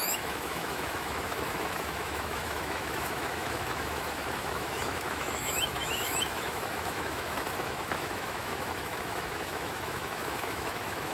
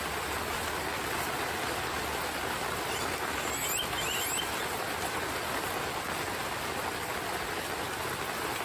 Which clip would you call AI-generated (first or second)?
first